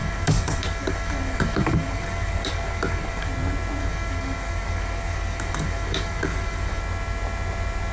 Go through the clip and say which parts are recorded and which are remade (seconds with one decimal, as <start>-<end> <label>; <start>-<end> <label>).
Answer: 0.0-3.3 remade; 3.3-3.8 recorded; 3.8-6.8 remade; 6.8-7.9 recorded